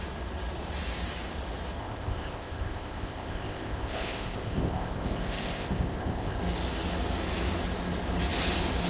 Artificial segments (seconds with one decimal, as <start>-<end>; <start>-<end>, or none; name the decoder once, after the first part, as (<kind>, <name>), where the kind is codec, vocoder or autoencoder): 1.8-6.4 (codec, ZipCodec)